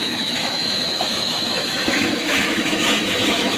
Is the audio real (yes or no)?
no